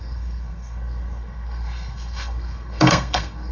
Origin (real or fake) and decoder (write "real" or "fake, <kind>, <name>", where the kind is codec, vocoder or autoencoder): fake, codec, SNAC